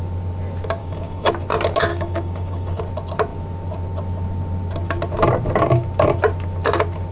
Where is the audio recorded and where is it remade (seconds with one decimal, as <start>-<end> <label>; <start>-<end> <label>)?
0.0-0.8 recorded; 0.8-1.3 remade; 1.3-1.9 recorded; 1.9-2.8 remade; 2.8-7.1 recorded